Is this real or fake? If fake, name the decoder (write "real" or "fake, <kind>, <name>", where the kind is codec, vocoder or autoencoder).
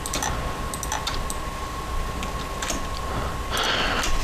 real